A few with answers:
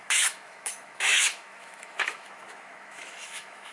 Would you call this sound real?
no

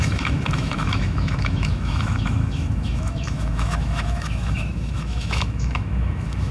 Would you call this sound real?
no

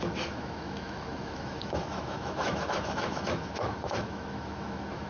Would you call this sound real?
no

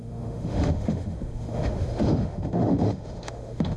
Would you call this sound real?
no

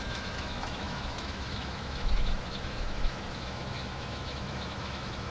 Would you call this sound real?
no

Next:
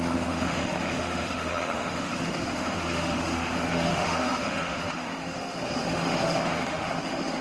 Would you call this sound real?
no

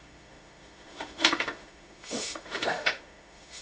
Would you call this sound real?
no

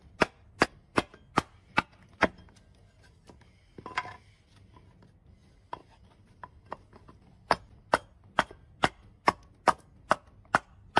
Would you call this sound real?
yes